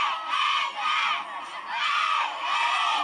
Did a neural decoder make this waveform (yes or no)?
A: no